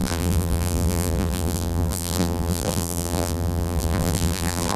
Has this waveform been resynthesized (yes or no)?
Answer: yes